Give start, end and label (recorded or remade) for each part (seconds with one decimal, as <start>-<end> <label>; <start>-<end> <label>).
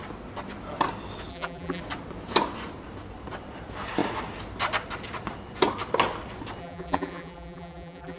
0.0-1.3 recorded; 1.3-1.8 remade; 1.8-6.6 recorded; 6.6-8.2 remade